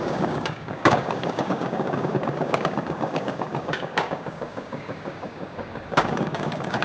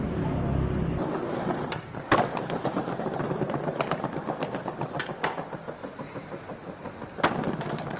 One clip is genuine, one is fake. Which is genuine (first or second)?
second